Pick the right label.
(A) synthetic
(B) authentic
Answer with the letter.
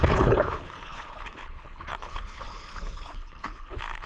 A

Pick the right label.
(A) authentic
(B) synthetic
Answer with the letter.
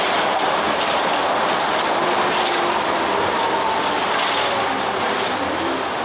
B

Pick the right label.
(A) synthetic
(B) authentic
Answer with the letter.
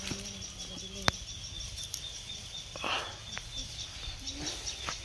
B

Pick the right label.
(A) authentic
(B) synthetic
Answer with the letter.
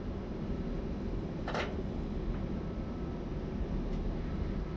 A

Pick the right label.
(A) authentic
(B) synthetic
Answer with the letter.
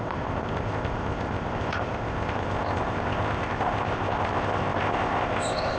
B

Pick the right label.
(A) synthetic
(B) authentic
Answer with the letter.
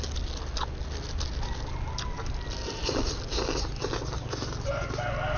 B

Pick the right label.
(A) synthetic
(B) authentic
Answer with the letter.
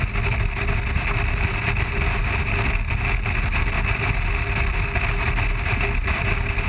B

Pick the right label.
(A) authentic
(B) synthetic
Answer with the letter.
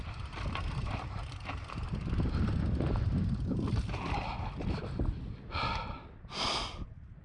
A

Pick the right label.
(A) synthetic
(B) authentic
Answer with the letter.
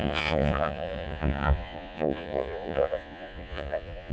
A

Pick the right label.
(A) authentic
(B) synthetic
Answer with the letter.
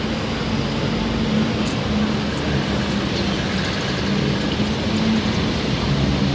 A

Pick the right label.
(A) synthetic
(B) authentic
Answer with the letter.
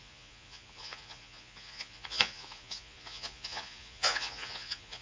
A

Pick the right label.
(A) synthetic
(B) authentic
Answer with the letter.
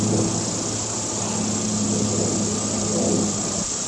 B